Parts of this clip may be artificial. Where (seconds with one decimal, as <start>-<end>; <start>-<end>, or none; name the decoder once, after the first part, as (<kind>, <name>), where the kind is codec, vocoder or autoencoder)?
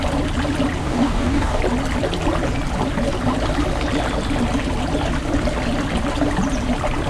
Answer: 0.8-1.6 (codec, DAC)